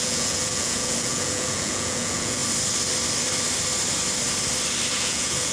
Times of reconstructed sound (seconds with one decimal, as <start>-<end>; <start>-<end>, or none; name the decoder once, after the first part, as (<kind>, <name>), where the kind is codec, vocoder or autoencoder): 0.0-2.4 (vocoder, Vocos); 4.9-5.5